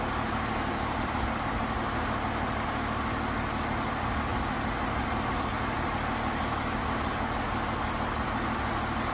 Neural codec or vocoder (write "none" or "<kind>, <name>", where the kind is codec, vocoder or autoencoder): none